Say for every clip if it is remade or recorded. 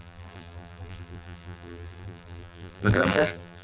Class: remade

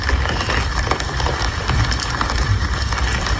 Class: remade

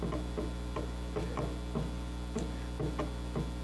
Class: recorded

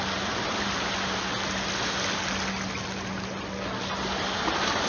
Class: recorded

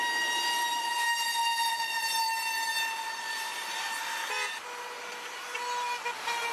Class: remade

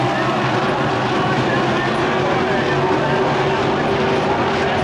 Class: recorded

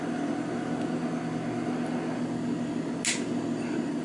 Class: recorded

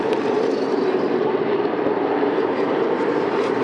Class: remade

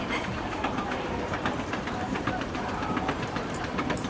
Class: remade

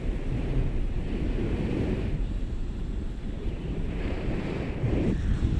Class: remade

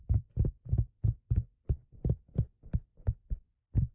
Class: remade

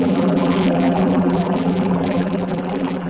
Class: remade